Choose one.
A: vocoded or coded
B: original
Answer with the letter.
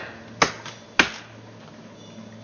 B